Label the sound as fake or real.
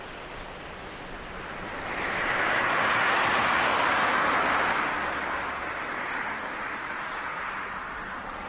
real